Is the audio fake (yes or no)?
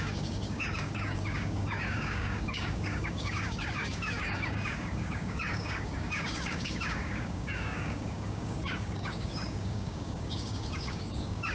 yes